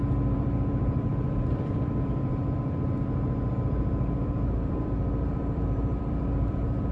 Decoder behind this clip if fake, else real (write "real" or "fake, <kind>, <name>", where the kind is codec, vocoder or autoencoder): fake, vocoder, BigVGAN v2